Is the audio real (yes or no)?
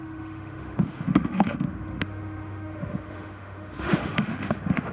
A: no